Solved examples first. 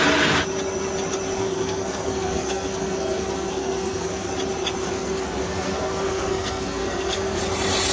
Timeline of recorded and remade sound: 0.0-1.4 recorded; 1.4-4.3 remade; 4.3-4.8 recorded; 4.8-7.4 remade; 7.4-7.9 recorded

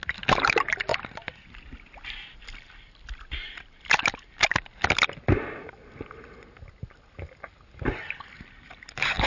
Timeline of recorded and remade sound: 0.0-9.3 recorded

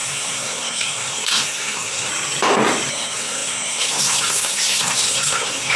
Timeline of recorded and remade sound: 0.0-2.1 remade; 2.1-2.9 recorded; 2.9-5.8 remade